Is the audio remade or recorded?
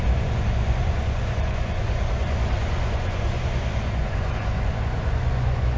remade